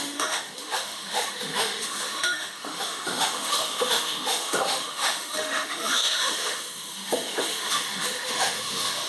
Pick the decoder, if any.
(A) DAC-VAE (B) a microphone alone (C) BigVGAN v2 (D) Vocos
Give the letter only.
A